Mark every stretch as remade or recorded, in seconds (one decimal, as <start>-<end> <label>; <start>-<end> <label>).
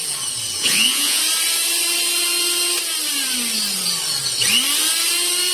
0.0-0.6 recorded; 0.6-1.2 remade; 1.2-5.5 recorded